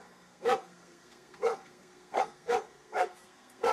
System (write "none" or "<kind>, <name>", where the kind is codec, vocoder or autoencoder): codec, SNAC